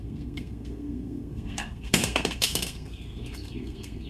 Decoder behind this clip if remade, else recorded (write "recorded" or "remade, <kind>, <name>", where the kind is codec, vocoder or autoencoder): remade, codec, SNAC